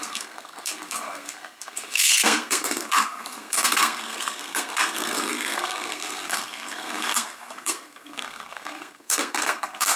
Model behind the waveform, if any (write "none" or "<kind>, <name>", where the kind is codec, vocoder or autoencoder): codec, SNAC